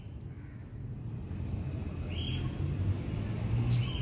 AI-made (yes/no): no